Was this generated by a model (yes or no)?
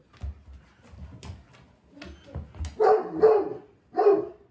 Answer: no